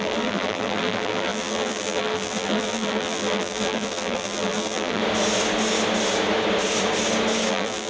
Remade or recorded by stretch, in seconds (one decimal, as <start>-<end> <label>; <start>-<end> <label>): 0.0-5.0 remade; 5.0-7.5 recorded; 7.5-7.9 remade